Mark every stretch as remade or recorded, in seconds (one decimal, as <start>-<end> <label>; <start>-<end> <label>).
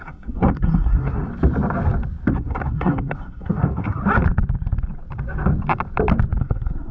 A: 0.0-1.3 remade; 1.3-2.3 recorded; 2.3-4.0 remade; 4.0-6.4 recorded; 6.4-6.9 remade